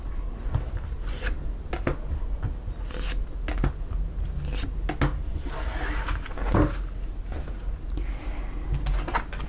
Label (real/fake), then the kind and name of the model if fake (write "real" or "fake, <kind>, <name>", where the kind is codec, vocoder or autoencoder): real